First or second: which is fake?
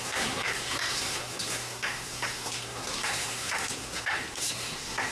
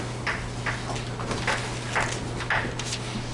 first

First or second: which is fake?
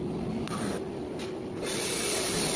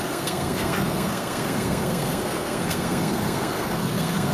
second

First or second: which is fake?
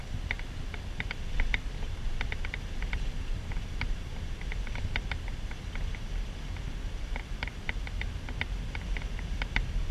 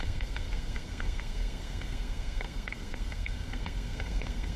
second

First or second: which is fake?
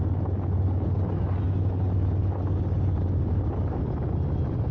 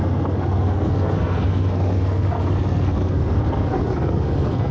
second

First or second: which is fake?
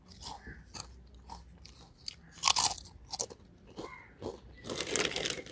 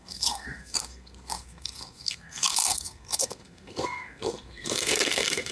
second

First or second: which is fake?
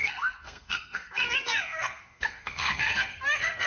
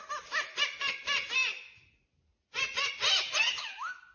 first